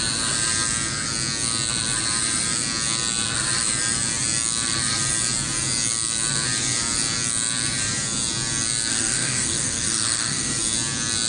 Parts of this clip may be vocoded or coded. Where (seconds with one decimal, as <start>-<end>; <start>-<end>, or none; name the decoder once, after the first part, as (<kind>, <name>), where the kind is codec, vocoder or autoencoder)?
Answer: 8.9-10.5 (codec, SNAC)